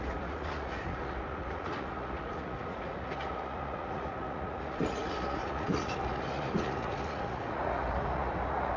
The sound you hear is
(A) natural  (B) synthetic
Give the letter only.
B